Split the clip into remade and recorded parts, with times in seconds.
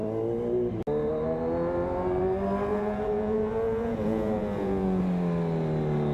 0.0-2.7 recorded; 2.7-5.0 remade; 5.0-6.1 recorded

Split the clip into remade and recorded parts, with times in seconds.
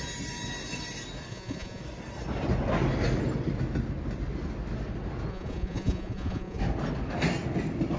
0.0-1.3 recorded; 1.3-1.8 remade; 1.8-5.3 recorded; 5.3-6.6 remade; 6.6-8.0 recorded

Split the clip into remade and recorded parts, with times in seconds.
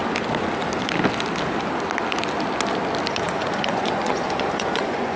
0.0-3.1 recorded; 3.1-5.2 remade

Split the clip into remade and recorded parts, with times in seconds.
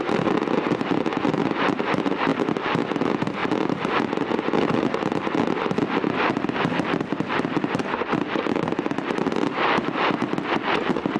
0.0-11.2 recorded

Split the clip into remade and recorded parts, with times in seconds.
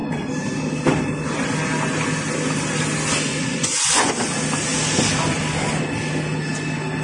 0.0-3.3 recorded; 3.3-4.1 remade; 4.1-7.0 recorded